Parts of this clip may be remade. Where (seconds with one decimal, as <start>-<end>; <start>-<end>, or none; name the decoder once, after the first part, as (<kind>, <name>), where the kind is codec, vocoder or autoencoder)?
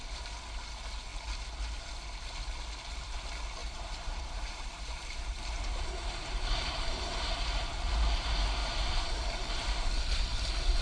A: 3.6-8.0 (vocoder, BigVGAN v2); 8.6-9.5